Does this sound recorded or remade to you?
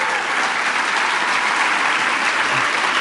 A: recorded